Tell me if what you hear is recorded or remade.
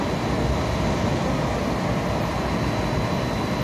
recorded